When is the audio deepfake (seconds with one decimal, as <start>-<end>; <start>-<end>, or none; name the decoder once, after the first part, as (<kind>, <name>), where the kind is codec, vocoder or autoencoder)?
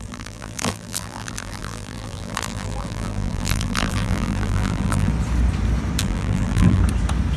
0.0-5.1 (vocoder, BigVGAN v2); 6.0-6.8